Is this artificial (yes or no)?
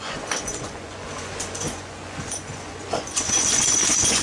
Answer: yes